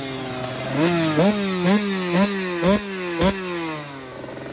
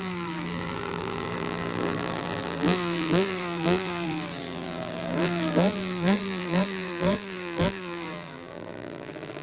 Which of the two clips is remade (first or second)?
second